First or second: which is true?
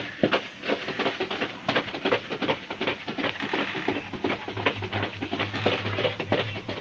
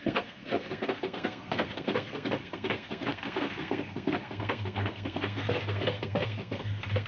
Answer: first